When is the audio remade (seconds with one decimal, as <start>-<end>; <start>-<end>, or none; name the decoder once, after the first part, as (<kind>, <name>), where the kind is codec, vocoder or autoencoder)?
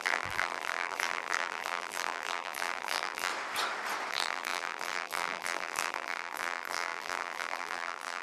0.0-3.3 (vocoder, BigVGAN v2); 4.1-8.2